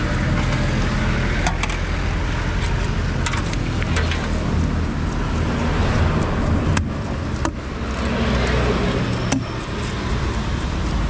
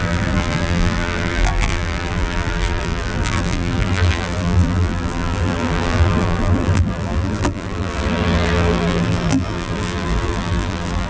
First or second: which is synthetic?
second